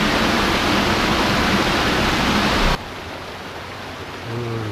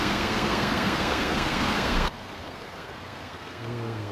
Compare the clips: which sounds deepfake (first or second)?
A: second